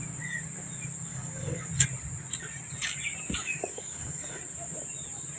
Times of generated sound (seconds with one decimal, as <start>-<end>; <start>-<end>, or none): 1.1-1.7; 3.4-4.4